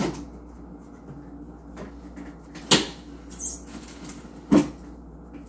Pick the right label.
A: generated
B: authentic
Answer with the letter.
B